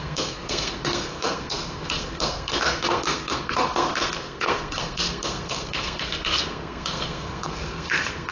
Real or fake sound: fake